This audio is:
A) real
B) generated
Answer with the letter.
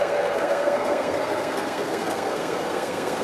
B